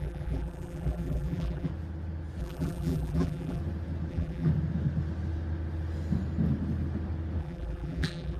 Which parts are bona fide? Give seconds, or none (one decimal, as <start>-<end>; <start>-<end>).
1.7-2.4; 3.6-4.1; 4.5-7.4